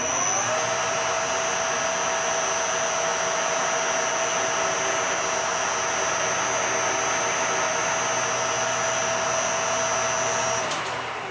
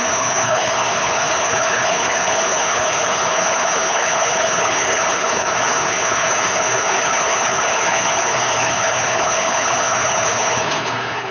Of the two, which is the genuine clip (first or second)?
first